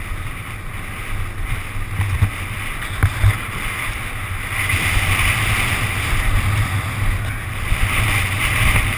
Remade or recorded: recorded